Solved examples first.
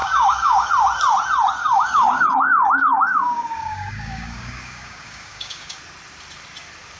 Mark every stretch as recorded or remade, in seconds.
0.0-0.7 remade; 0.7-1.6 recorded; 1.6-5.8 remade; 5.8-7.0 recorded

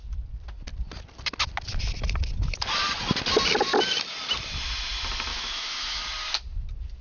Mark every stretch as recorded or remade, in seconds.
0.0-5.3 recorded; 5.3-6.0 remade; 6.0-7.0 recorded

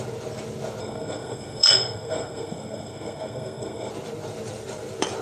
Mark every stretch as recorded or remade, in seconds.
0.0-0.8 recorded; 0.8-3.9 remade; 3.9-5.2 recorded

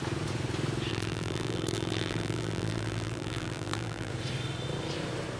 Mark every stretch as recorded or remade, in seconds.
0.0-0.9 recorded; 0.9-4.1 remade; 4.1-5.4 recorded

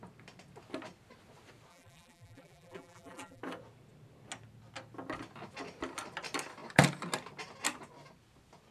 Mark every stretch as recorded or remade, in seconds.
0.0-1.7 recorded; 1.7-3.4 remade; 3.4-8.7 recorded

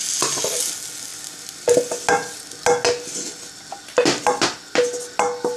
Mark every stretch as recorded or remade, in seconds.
0.0-5.6 recorded

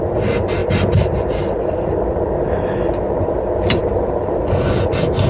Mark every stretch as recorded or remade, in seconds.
0.0-0.6 recorded; 0.6-3.8 remade; 3.8-5.3 recorded